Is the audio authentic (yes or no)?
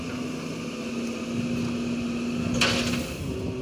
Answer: yes